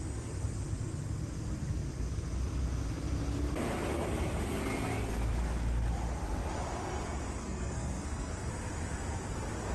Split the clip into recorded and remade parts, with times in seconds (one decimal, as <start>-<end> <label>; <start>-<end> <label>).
0.0-7.4 recorded; 7.4-8.5 remade; 8.5-9.7 recorded